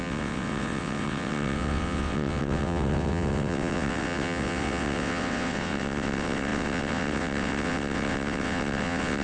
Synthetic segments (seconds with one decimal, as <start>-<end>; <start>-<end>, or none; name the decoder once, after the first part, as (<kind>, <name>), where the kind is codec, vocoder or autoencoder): 0.0-9.2 (vocoder, WaveNeXt)